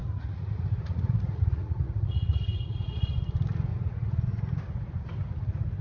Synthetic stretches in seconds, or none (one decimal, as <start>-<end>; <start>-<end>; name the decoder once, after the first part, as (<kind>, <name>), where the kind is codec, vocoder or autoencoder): 0.0-3.1 (vocoder, Vocos); 3.7-4.6